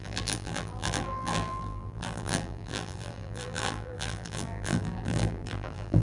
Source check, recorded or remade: remade